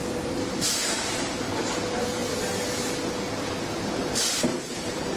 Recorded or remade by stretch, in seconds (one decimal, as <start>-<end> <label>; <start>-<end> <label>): 0.0-1.5 remade; 1.5-4.5 recorded; 4.5-5.2 remade